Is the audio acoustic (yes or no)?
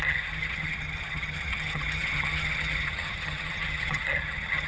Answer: no